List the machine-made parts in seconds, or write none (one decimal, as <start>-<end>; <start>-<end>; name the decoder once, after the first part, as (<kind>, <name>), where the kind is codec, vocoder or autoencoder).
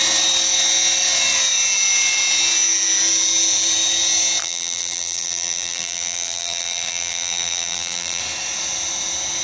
4.4-8.2 (vocoder, BigVGAN v2)